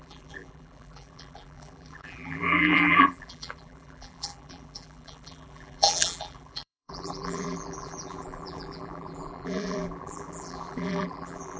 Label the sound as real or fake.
fake